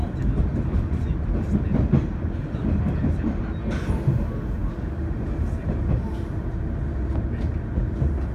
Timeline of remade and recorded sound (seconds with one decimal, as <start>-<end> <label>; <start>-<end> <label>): 0.0-2.4 recorded; 2.4-3.4 remade; 3.4-8.3 recorded

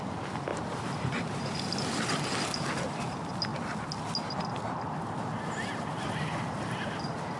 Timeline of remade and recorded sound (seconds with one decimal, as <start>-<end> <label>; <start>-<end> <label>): 0.0-0.5 recorded; 0.5-2.0 remade; 2.0-7.4 recorded

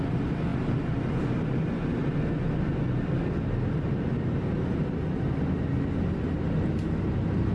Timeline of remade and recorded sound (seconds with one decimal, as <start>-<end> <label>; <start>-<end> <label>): 0.0-7.5 recorded

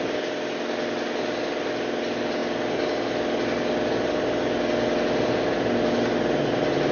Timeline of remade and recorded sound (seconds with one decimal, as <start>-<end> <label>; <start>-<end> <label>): 0.0-6.9 recorded

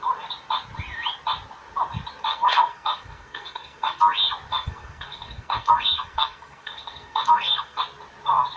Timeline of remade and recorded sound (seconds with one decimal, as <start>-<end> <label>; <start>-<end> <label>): 0.0-2.3 recorded; 2.3-4.0 remade; 4.0-4.5 recorded; 4.5-7.8 remade; 7.8-8.6 recorded